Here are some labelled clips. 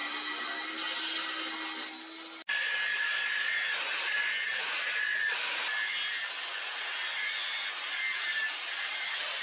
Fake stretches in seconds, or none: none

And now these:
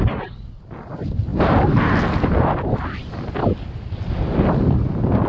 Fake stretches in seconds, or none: none

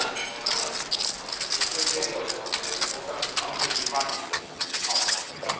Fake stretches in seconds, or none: 4.1-5.6 (vocoder, HiFi-GAN)

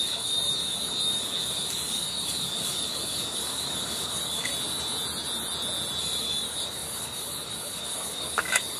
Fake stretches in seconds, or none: 0.0-4.5 (codec, DAC); 6.0-8.8

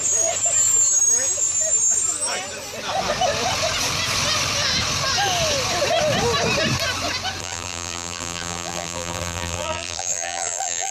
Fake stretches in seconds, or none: 7.4-10.9 (vocoder, BigVGAN v2)

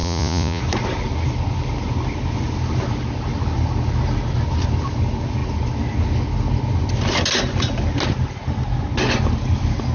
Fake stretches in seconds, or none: 0.0-0.6 (vocoder, Vocos)

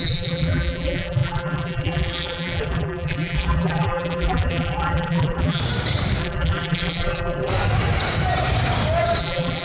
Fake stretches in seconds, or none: 0.0-5.6 (vocoder, BigVGAN v2); 6.2-7.5; 9.2-9.6